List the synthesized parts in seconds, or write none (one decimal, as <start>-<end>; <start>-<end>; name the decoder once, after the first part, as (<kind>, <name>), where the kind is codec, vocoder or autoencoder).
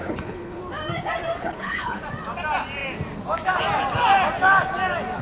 0.0-0.6 (codec, HILCodec); 1.4-2.0